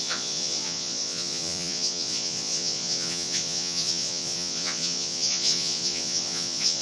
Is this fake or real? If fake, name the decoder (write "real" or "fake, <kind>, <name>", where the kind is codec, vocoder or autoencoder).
fake, vocoder, Vocos